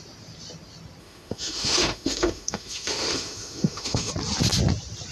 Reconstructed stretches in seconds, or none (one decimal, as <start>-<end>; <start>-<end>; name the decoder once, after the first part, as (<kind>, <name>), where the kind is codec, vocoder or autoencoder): 1.0-4.1 (autoencoder, DAC-VAE)